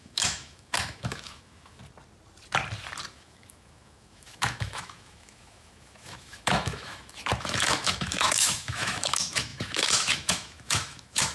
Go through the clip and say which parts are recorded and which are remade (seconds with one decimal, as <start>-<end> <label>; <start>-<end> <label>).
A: 0.0-1.8 remade; 1.8-3.1 recorded; 3.1-11.3 remade